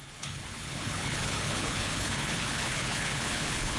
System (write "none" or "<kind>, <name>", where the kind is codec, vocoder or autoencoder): codec, HILCodec